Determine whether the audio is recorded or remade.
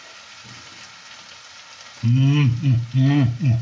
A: recorded